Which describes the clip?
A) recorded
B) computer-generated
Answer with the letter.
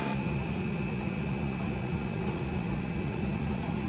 B